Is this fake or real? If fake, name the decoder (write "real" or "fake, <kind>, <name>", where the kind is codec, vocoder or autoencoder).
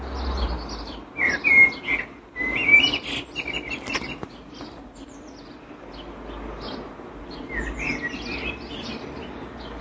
real